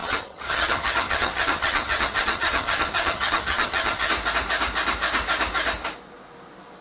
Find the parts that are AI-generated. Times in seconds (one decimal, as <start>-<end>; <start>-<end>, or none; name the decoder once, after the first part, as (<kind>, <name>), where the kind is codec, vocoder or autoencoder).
0.0-4.1 (vocoder, HiFi-GAN)

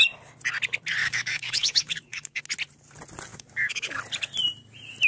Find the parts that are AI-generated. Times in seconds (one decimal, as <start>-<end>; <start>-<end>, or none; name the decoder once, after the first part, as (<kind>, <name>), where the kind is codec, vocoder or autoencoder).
1.0-2.4 (codec, DAC); 3.3-4.0

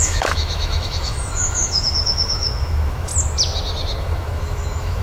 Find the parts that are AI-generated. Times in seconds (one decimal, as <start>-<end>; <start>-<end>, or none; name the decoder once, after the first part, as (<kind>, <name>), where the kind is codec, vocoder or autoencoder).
0.0-3.1 (autoencoder, DAC-VAE); 4.0-5.0

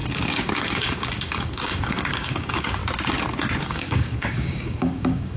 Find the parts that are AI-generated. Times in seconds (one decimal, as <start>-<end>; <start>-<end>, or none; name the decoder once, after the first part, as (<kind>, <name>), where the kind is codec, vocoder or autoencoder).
0.0-2.8 (codec, DAC); 3.6-5.4

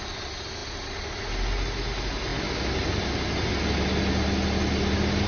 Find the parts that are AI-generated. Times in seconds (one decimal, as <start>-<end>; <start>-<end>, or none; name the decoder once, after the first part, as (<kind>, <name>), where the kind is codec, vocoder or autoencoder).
none

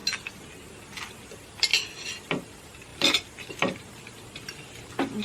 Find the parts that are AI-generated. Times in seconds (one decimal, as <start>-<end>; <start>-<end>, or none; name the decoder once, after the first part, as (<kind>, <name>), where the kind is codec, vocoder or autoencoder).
0.7-1.7 (vocoder, BigVGAN v2); 2.3-5.2

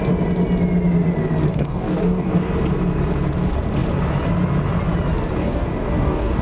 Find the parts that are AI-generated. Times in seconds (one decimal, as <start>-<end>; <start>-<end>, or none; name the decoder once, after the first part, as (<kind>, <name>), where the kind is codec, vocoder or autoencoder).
1.5-2.5 (codec, DAC); 5.4-6.4